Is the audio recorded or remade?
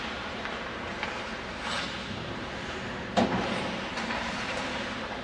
remade